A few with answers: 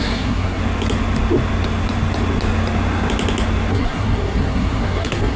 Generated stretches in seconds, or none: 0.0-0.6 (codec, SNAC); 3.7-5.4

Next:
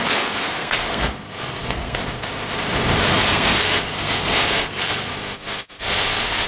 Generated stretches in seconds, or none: 0.0-2.0 (codec, SNAC); 3.1-5.1; 5.8-6.5